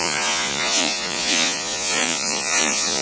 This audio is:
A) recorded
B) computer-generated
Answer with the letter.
B